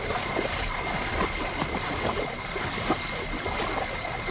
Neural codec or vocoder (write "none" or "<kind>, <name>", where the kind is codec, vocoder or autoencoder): vocoder, BigVGAN v2